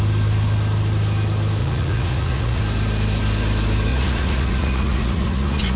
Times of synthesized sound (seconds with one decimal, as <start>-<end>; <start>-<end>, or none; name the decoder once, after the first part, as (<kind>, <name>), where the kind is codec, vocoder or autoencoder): 1.6-2.6 (vocoder, Vocos); 3.9-5.8